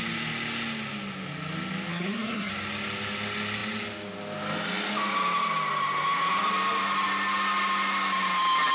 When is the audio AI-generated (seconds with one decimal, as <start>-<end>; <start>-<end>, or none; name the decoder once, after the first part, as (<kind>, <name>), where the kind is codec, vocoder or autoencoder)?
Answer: 1.9-2.5 (codec, SNAC)